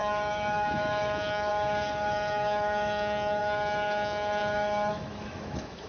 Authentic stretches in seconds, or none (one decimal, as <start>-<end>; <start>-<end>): none